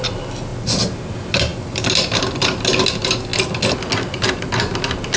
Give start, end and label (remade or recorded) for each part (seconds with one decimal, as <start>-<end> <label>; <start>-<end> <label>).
0.0-5.2 recorded